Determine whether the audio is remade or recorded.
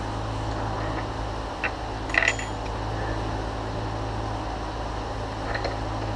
recorded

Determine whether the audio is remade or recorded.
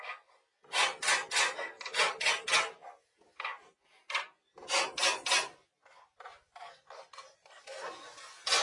recorded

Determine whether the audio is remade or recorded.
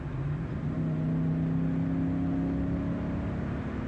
recorded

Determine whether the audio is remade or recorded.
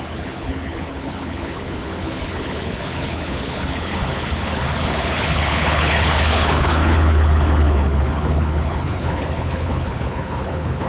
remade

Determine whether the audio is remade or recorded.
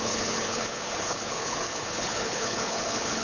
remade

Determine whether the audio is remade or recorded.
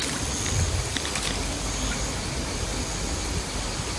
recorded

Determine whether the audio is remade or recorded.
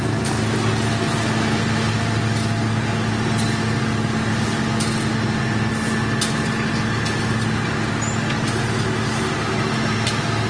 recorded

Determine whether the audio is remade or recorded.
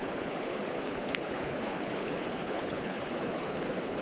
remade